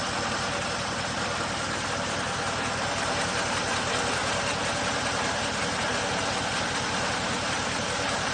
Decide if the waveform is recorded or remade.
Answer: recorded